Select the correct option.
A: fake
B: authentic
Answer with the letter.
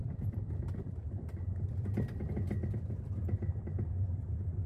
B